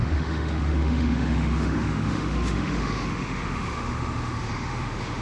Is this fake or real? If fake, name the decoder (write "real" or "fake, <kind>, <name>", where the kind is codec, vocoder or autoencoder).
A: fake, autoencoder, DAC-VAE